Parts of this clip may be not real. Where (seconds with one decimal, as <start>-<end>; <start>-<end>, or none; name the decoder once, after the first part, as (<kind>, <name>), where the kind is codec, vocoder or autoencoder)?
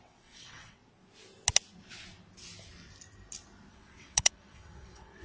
0.0-0.8 (vocoder, WaveNeXt); 3.7-5.2